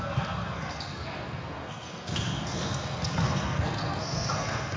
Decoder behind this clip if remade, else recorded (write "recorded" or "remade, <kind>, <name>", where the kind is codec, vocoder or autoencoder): remade, codec, SNAC